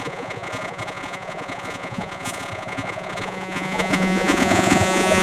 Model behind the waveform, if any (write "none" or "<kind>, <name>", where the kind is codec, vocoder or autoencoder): vocoder, Vocos